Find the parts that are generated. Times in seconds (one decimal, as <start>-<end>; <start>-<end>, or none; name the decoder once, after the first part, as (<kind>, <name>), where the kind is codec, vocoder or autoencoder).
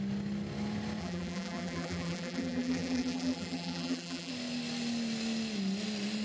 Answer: 1.0-4.3 (vocoder, BigVGAN v2)